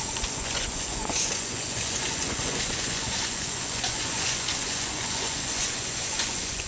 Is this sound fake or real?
fake